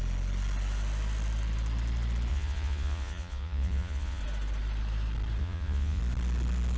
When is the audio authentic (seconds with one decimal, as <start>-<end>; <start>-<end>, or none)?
0.0-2.3; 4.2-5.4; 6.0-6.8